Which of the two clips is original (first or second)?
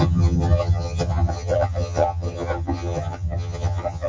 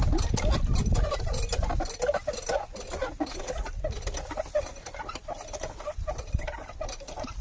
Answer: second